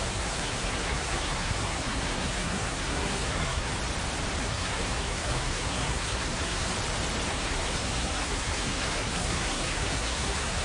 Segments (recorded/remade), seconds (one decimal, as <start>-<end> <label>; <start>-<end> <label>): 0.0-3.7 remade; 3.7-4.4 recorded; 4.4-6.7 remade; 6.7-7.3 recorded; 7.3-10.6 remade